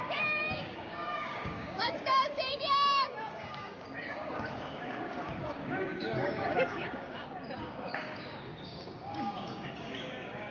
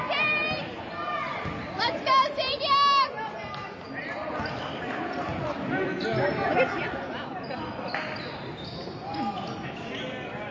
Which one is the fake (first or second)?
first